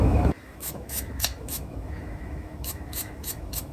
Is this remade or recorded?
remade